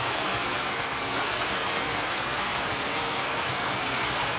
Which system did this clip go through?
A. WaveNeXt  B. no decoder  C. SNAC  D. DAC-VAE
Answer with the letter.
C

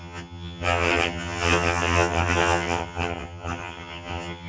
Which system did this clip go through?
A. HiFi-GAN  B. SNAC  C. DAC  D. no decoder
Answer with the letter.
A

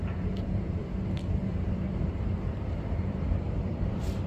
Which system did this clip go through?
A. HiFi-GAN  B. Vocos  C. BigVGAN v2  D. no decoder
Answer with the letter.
C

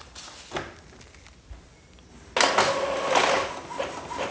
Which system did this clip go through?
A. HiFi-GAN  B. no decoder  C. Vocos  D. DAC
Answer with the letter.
B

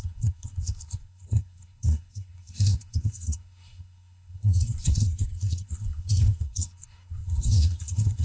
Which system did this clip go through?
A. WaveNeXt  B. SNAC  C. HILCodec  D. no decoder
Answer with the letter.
B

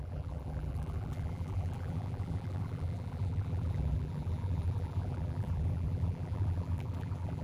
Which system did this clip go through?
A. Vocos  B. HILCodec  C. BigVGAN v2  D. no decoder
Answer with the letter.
C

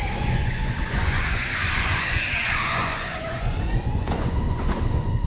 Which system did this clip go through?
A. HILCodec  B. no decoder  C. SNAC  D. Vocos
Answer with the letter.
D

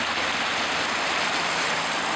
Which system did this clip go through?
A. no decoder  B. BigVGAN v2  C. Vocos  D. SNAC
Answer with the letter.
A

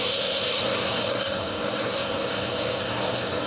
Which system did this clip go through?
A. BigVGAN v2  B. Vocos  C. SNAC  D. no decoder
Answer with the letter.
C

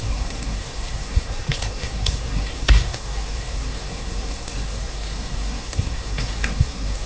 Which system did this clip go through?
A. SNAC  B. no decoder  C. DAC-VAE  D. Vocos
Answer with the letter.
A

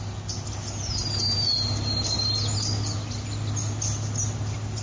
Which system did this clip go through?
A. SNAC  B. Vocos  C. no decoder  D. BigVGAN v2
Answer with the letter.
C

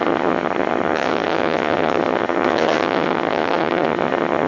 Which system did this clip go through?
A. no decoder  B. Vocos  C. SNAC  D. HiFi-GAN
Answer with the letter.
D